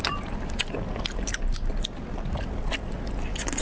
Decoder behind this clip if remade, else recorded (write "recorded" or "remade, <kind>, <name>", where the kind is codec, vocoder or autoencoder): recorded